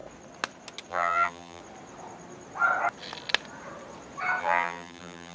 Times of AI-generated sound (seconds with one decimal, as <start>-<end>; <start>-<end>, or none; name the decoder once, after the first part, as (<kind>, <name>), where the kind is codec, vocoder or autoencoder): 0.9-1.6 (vocoder, BigVGAN v2); 4.4-5.3